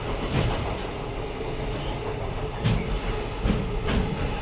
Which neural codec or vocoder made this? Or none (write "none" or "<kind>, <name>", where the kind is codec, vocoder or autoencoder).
none